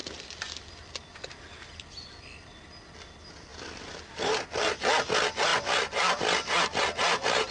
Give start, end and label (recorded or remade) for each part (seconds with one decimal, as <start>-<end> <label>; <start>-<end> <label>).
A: 0.0-0.7 remade; 0.7-3.5 recorded; 3.5-4.7 remade; 4.7-7.5 recorded